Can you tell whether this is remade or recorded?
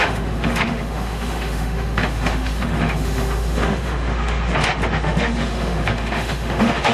remade